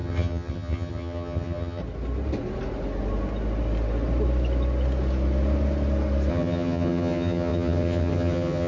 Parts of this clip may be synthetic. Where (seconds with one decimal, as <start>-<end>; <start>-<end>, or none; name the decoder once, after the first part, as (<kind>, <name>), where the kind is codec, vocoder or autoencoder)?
0.0-1.8 (vocoder, HiFi-GAN); 6.3-8.7